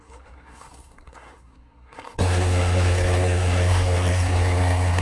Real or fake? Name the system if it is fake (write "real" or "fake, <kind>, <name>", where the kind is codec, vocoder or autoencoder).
fake, codec, SNAC